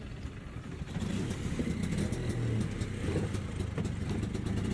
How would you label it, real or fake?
real